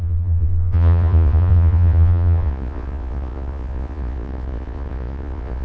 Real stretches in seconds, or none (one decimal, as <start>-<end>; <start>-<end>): none